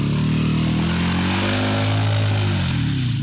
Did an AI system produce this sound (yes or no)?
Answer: no